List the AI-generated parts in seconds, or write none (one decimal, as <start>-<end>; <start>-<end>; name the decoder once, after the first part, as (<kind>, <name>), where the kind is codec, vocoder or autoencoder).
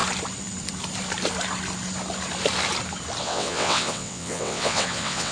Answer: 3.2-5.3 (vocoder, WaveNeXt)